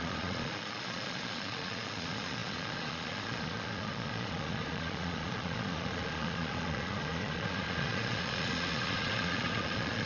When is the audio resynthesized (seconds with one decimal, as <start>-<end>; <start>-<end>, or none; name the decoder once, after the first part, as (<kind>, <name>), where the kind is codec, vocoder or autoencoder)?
0.0-10.1 (vocoder, Vocos)